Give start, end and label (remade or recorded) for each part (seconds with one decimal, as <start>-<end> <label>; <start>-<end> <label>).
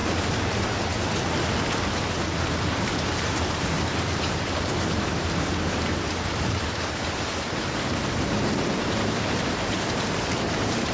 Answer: 0.0-1.7 recorded; 1.7-10.9 remade